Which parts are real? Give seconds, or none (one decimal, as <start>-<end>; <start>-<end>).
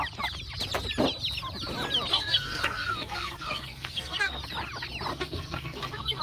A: 0.0-2.1; 4.4-5.1